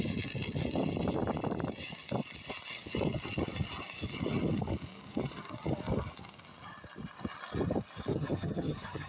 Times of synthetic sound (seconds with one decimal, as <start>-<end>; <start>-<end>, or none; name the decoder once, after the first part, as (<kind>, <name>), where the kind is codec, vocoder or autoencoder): 8.1-9.1 (vocoder, HiFi-GAN)